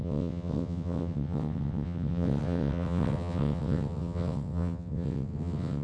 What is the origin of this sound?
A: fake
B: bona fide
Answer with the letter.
A